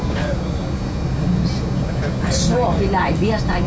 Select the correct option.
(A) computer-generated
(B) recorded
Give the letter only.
B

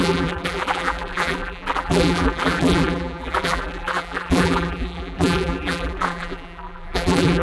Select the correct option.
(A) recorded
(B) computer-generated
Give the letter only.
B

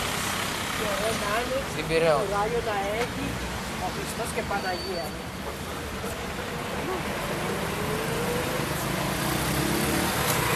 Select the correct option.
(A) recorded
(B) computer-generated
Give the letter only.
A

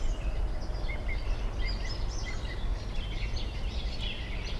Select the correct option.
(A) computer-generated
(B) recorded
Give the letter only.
B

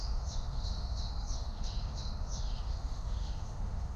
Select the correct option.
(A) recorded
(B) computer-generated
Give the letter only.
B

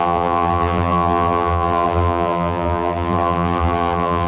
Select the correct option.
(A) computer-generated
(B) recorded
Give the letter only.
A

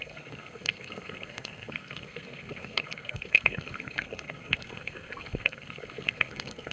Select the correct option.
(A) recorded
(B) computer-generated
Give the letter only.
B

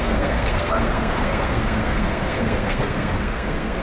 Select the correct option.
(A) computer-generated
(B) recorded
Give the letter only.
A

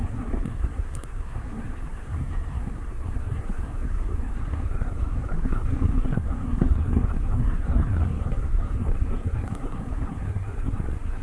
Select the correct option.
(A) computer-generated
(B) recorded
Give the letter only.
A